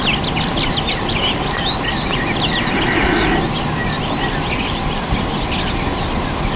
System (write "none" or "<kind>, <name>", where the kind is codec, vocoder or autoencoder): none